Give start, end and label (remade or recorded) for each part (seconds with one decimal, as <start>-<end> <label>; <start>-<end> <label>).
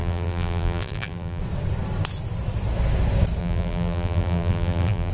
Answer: 0.0-1.4 remade; 1.4-3.4 recorded; 3.4-5.1 remade